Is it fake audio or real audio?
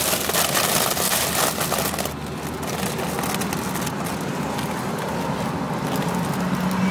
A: real